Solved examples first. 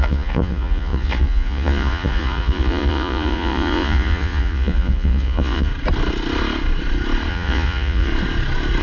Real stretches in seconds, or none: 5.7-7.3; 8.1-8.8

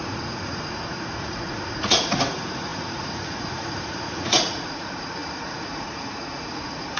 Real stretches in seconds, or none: none

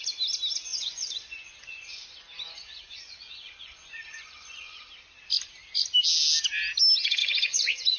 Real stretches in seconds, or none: 0.0-0.7; 4.9-7.2

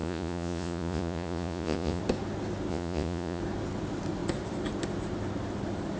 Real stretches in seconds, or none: 2.0-2.7; 3.4-6.0

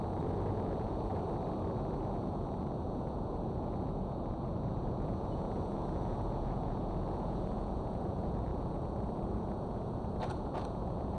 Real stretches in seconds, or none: 1.1-2.0

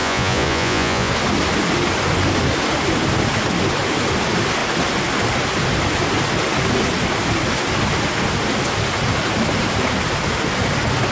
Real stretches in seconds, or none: 1.1-11.1

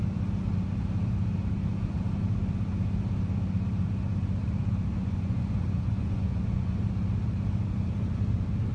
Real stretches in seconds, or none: 0.0-4.9; 6.8-8.7